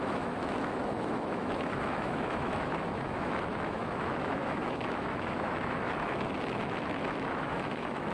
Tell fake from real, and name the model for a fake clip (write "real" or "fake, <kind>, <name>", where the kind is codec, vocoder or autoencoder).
fake, autoencoder, DAC-VAE